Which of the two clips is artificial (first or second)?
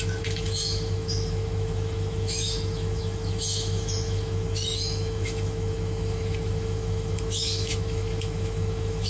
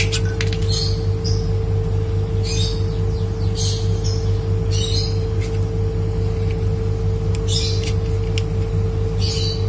first